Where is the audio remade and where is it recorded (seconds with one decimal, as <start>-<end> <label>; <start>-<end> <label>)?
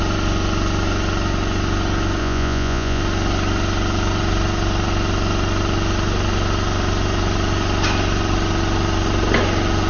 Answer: 0.0-2.2 recorded; 2.2-3.0 remade; 3.0-9.9 recorded